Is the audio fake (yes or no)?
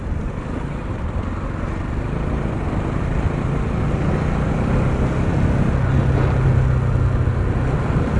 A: no